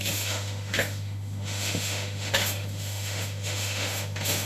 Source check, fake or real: fake